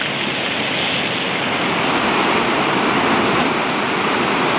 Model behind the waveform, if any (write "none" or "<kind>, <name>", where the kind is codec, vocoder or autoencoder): none